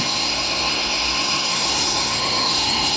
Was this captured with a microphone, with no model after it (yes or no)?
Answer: no